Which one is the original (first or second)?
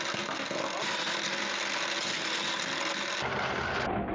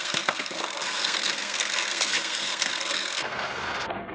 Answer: first